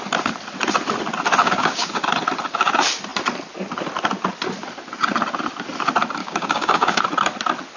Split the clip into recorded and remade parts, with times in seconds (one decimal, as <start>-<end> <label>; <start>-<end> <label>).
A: 0.0-1.4 recorded; 1.4-2.0 remade; 2.0-6.2 recorded; 6.2-7.0 remade; 7.0-7.8 recorded